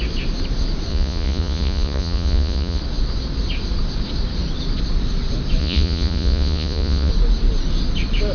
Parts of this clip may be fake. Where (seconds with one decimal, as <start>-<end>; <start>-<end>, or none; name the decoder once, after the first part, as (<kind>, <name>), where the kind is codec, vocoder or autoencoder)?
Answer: 0.9-2.8 (vocoder, Vocos); 5.6-7.1